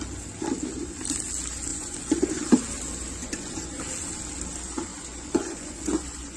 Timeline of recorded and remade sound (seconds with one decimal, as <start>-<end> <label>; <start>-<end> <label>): 0.0-1.7 recorded; 1.7-2.3 remade; 2.3-3.2 recorded; 3.2-3.8 remade; 3.8-4.9 recorded; 4.9-6.4 remade